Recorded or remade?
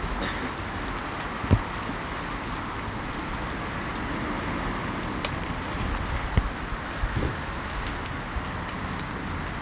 recorded